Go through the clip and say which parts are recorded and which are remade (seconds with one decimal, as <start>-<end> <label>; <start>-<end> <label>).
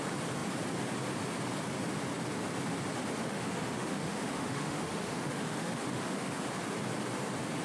0.0-3.2 recorded; 3.2-6.4 remade; 6.4-7.6 recorded